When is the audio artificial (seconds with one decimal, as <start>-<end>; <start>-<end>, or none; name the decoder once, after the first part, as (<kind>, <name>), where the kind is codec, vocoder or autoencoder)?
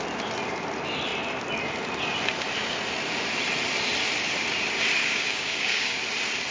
5.0-6.0 (codec, DAC)